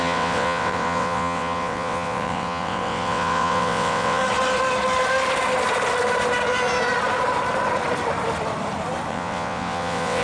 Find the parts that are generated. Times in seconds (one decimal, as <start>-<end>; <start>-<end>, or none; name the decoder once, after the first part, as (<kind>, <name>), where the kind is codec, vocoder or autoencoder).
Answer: 0.0-4.2 (vocoder, WaveNeXt); 9.1-10.2